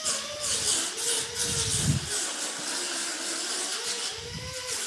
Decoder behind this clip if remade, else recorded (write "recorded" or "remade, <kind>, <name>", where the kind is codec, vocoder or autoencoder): recorded